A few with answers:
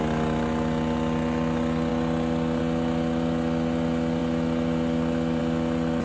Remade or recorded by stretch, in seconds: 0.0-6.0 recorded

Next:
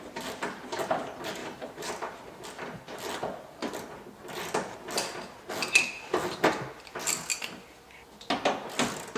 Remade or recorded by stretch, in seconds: 0.0-1.4 recorded; 1.4-1.9 remade; 1.9-9.2 recorded

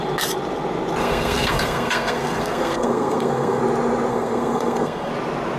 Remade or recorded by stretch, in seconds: 0.0-1.0 recorded; 1.0-3.6 remade; 3.6-4.1 recorded; 4.1-5.1 remade; 5.1-5.6 recorded